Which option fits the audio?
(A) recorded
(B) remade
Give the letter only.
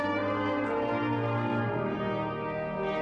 B